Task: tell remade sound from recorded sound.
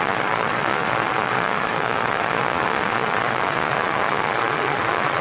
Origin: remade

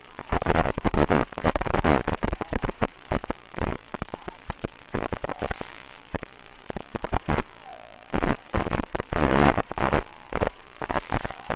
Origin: remade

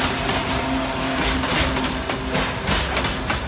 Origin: recorded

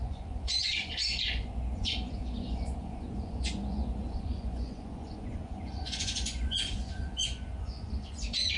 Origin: remade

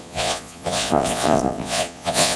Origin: remade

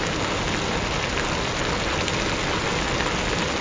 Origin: recorded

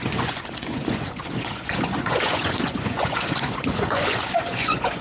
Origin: remade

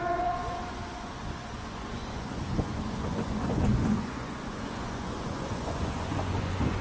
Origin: remade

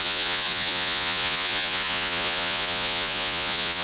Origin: remade